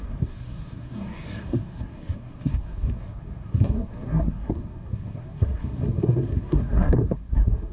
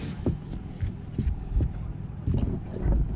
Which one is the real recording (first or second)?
second